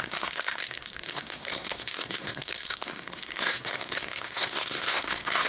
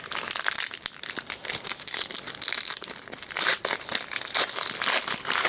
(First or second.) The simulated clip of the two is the first